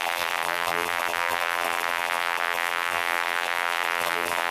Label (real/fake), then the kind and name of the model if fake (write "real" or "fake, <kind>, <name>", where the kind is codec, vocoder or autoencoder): fake, vocoder, BigVGAN v2